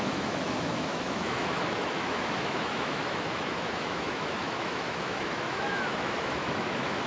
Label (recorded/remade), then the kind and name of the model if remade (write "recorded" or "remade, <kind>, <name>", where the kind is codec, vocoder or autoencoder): remade, autoencoder, DAC-VAE